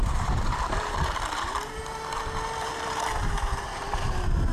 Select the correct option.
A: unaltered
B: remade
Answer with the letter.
B